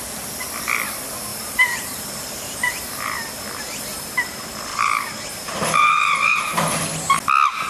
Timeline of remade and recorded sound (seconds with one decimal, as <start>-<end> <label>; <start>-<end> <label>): 0.0-1.3 recorded; 1.3-3.4 remade; 3.4-4.7 recorded; 4.7-6.8 remade; 6.8-7.7 recorded